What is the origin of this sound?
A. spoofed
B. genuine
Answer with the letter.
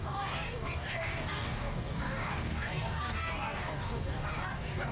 A